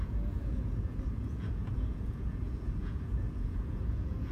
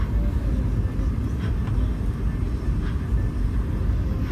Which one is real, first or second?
second